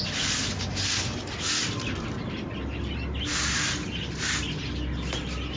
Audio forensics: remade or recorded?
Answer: recorded